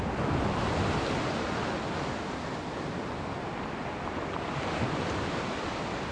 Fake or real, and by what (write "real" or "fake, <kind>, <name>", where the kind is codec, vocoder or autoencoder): real